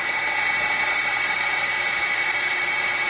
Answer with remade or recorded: recorded